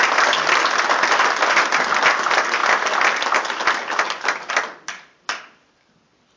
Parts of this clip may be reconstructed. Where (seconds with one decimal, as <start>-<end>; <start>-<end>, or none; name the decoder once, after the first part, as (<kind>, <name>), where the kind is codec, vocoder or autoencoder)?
none